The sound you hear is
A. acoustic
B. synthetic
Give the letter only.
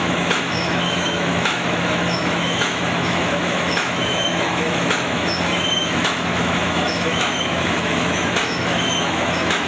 B